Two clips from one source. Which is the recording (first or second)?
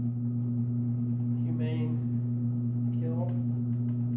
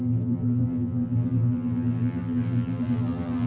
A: first